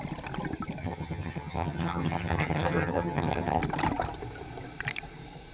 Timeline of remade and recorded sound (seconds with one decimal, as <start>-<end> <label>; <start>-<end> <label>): 0.0-0.8 recorded; 0.8-3.6 remade; 3.6-5.5 recorded